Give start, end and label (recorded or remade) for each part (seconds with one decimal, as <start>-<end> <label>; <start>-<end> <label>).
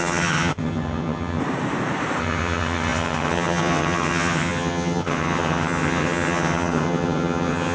0.0-1.4 remade; 1.4-2.2 recorded; 2.2-7.7 remade